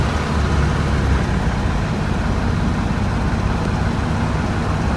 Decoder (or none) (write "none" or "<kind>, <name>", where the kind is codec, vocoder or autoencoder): none